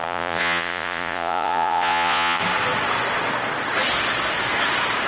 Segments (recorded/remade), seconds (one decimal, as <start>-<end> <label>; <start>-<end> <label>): 0.0-2.4 remade; 2.4-5.1 recorded